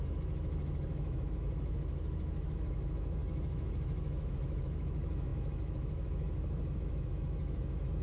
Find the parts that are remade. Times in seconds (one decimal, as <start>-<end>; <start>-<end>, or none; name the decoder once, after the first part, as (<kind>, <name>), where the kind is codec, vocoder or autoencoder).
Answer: 0.0-8.0 (autoencoder, DAC-VAE)